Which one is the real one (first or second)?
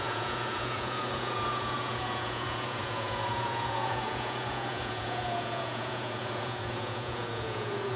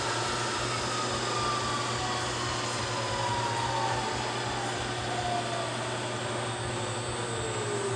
second